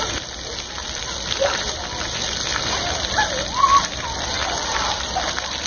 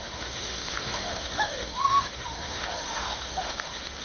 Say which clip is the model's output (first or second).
second